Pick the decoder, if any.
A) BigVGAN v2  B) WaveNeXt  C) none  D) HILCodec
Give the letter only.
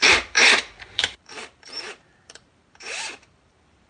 A